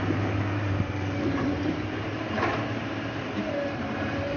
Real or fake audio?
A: fake